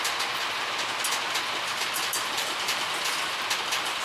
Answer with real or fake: real